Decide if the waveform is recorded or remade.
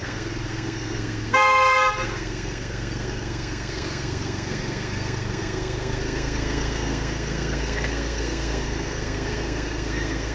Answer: remade